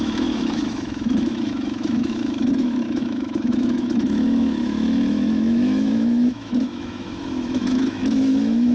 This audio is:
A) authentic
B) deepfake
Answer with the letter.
B